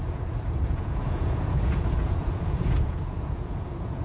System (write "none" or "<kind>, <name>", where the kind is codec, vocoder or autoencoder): vocoder, Vocos